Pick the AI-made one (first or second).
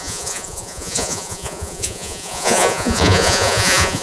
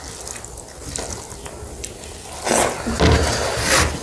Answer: first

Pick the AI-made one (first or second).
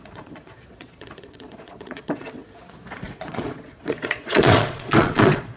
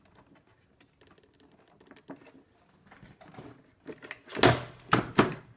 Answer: first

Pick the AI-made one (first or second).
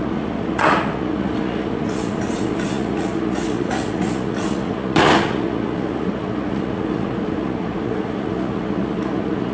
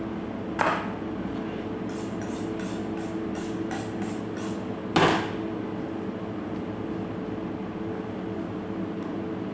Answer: first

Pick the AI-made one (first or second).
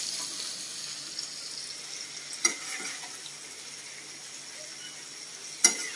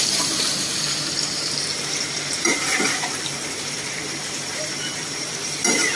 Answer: second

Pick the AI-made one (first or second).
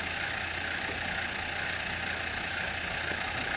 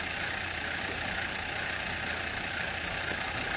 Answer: second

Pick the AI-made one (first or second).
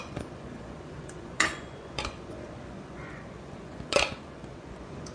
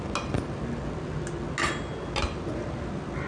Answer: first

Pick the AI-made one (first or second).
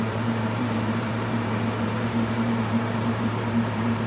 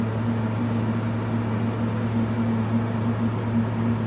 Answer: first